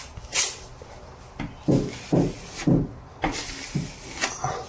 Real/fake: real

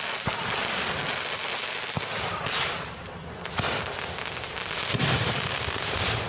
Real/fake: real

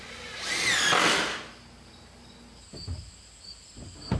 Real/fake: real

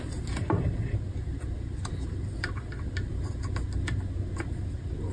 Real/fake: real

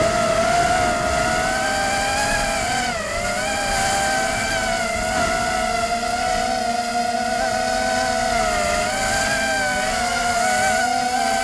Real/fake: real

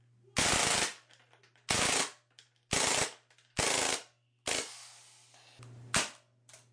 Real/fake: real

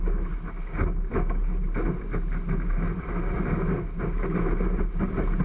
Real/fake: real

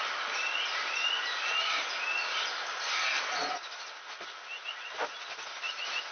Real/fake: real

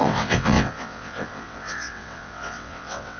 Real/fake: fake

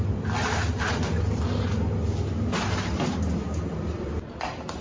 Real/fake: real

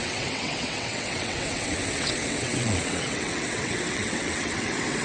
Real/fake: fake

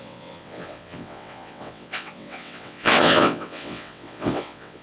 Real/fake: fake